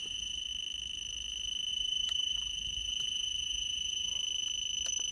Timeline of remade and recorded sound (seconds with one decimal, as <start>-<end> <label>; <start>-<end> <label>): 0.0-0.5 remade; 0.5-1.7 recorded; 1.7-4.1 remade; 4.1-5.1 recorded